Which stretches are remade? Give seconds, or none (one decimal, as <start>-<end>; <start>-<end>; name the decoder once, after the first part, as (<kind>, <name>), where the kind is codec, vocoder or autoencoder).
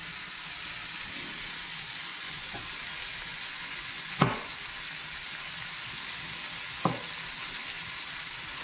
2.1-2.6 (vocoder, Vocos); 3.3-4.5